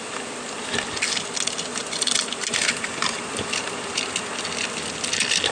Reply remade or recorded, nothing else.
recorded